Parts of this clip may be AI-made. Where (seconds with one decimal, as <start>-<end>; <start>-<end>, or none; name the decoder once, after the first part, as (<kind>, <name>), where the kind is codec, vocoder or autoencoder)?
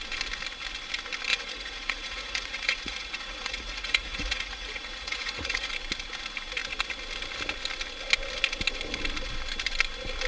1.3-5.7 (vocoder, Vocos)